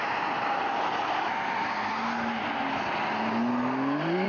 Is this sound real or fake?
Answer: real